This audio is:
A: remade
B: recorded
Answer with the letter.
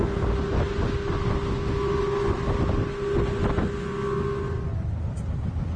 B